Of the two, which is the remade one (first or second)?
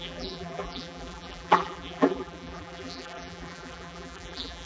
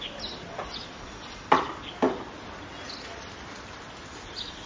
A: first